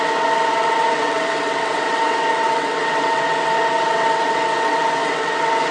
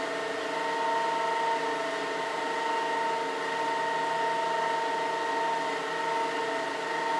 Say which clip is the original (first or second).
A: second